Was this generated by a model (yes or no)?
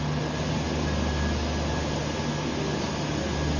no